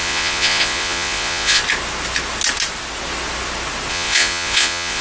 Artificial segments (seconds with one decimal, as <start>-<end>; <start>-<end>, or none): 0.0-1.6; 3.9-5.0